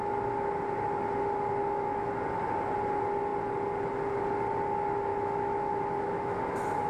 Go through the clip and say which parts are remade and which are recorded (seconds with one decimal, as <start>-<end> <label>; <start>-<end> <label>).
0.0-1.6 recorded; 1.6-2.1 remade; 2.1-5.1 recorded; 5.1-6.4 remade; 6.4-6.9 recorded